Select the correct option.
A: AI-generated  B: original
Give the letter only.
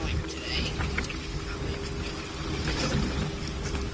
B